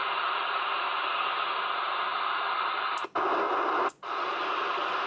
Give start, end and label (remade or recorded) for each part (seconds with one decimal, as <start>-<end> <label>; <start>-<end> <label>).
0.0-2.1 remade; 2.1-3.9 recorded; 3.9-5.1 remade